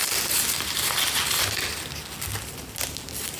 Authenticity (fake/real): real